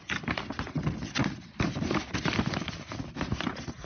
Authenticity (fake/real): real